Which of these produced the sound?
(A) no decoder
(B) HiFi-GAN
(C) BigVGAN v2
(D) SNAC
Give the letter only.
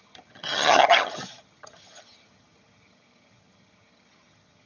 B